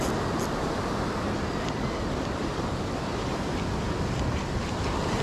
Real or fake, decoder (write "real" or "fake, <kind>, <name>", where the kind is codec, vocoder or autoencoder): real